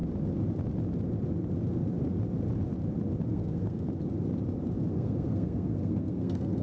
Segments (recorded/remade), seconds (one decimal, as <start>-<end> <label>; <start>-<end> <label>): 0.0-3.3 recorded; 3.3-3.9 remade; 3.9-4.9 recorded; 4.9-6.6 remade